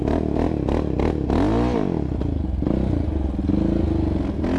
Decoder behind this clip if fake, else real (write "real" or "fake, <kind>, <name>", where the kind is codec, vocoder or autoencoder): real